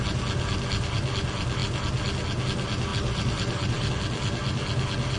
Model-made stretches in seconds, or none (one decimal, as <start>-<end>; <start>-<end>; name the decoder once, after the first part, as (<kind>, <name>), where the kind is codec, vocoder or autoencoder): 2.9-3.9 (vocoder, BigVGAN v2)